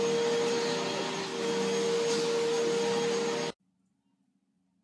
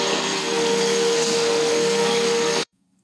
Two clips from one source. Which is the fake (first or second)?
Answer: second